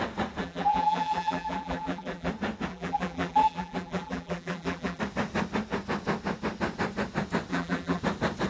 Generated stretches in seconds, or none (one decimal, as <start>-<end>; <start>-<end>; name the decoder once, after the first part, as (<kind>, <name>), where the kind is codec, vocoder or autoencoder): 0.4-2.3 (vocoder, BigVGAN v2); 2.7-5.0; 7.5-8.0